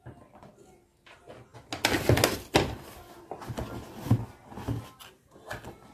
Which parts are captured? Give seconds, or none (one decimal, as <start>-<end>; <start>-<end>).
0.0-5.9